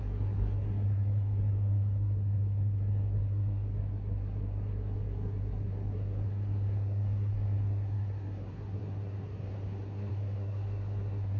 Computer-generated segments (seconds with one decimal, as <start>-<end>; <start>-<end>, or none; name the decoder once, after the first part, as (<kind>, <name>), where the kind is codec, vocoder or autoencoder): 0.0-11.4 (codec, SNAC)